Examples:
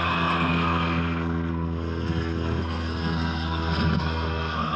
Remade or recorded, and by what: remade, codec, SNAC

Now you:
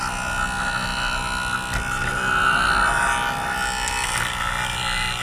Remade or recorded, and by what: recorded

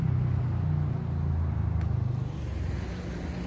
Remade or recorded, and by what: recorded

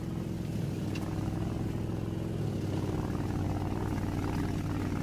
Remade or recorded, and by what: recorded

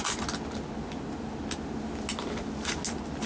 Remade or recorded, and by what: recorded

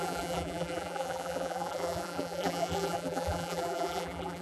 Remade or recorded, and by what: remade, vocoder, BigVGAN v2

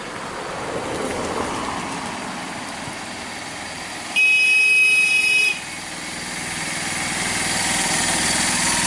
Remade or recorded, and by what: recorded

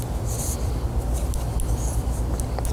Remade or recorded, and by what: recorded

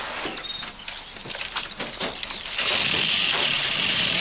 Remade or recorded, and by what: recorded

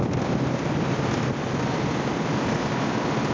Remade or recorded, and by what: recorded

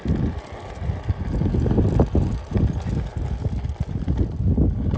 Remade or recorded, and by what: recorded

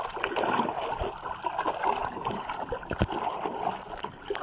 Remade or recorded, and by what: recorded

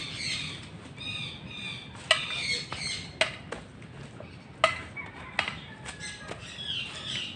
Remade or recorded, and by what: recorded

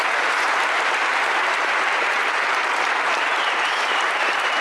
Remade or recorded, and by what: remade, vocoder, BigVGAN v2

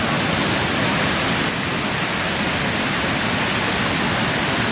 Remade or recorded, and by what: recorded